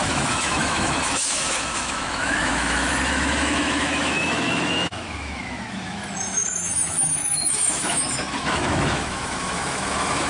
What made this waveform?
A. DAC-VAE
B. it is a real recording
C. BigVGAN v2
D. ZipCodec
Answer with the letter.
A